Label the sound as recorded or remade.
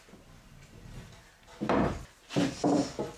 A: recorded